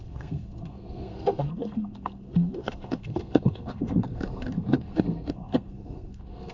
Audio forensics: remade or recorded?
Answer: remade